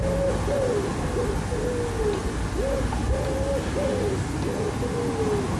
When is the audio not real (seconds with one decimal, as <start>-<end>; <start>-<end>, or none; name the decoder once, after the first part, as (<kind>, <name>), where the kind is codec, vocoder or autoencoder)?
none